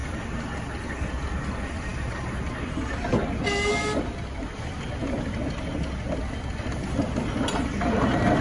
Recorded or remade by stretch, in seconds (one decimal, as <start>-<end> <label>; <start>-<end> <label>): 0.0-8.4 recorded